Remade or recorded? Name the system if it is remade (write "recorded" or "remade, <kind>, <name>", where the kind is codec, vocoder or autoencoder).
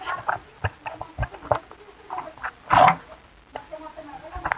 recorded